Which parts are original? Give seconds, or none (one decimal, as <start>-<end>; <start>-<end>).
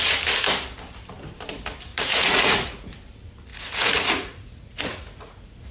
0.0-1.9; 2.9-3.5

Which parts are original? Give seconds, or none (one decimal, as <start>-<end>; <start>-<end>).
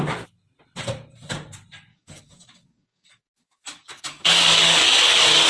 0.0-1.9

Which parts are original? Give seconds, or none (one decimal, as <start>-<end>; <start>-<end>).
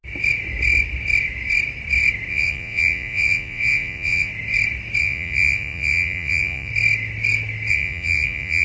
0.0-2.3; 4.3-5.0; 6.7-7.7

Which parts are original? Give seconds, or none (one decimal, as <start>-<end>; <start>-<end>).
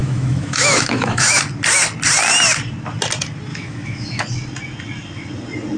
1.4-3.5; 4.2-5.8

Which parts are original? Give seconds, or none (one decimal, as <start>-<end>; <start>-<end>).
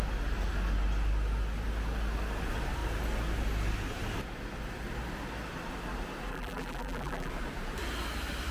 0.0-6.3; 7.3-8.5